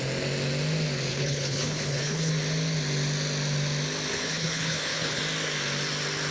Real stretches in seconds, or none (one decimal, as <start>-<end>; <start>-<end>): 0.0-1.1; 2.3-4.1; 5.2-6.3